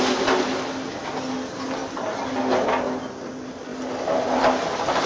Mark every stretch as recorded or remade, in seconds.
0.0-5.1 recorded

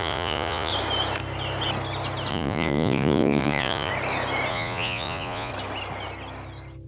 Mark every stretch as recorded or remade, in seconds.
0.0-0.7 remade; 0.7-2.3 recorded; 2.3-3.9 remade; 3.9-4.5 recorded; 4.5-5.5 remade; 5.5-6.9 recorded

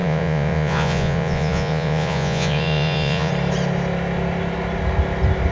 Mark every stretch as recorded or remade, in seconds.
0.0-3.3 remade; 3.3-5.5 recorded

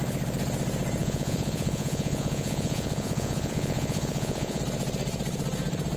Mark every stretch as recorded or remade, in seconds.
0.0-1.0 recorded; 1.0-4.6 remade; 4.6-6.0 recorded

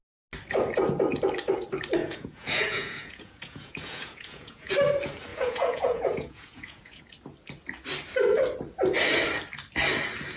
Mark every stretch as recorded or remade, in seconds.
0.0-2.0 recorded; 2.0-4.7 remade; 4.7-5.3 recorded; 5.3-7.0 remade; 7.0-10.4 recorded

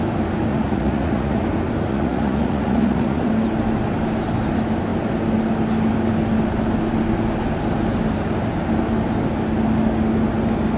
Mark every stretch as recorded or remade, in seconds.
0.0-0.5 recorded; 0.5-1.4 remade; 1.4-1.9 recorded; 1.9-3.3 remade; 3.3-10.8 recorded

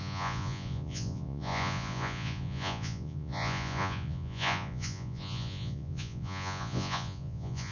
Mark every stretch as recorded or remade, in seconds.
0.0-7.7 remade